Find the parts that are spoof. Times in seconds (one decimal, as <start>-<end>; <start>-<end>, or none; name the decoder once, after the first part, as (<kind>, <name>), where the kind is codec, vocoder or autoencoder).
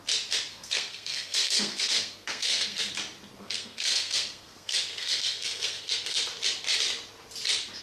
0.5-2.9 (codec, SNAC); 3.4-6.2